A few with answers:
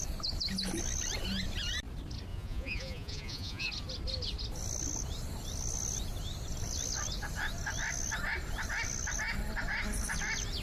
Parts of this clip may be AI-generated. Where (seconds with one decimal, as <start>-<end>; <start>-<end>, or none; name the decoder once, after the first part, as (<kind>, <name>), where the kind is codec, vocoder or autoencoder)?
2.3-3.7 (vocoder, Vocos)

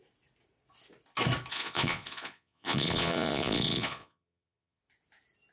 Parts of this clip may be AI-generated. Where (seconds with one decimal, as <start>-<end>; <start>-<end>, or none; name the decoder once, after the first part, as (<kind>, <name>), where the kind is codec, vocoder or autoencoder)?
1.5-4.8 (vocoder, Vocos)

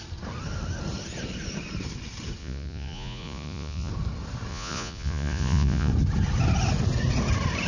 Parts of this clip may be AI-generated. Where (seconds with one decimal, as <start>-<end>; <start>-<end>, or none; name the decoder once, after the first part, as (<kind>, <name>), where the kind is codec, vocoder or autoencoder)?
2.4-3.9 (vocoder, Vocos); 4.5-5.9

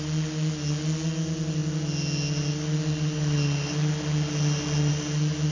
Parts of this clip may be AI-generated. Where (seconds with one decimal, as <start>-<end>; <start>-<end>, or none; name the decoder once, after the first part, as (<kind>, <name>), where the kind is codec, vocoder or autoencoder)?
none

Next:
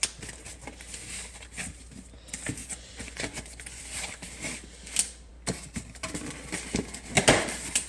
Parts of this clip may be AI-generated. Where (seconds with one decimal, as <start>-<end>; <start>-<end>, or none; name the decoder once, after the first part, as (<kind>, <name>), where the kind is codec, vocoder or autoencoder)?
2.6-3.8 (vocoder, Vocos)